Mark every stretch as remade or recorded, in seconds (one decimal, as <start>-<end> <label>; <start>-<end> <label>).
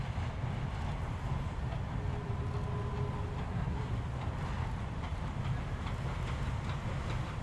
0.0-3.4 recorded; 3.4-3.9 remade; 3.9-7.4 recorded